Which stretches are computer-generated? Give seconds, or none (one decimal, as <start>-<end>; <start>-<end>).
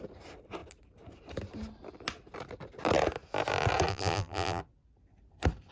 3.9-4.6